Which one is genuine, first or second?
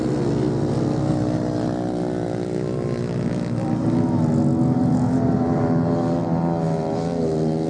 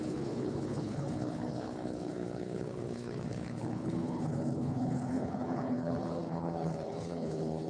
first